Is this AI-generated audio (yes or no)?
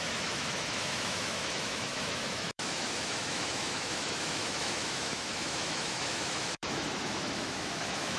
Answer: yes